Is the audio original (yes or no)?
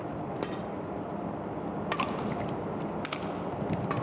yes